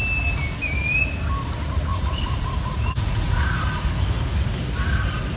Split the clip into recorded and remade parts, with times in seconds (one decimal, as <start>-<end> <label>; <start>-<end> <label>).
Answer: 0.0-1.9 recorded; 1.9-3.9 remade; 3.9-5.4 recorded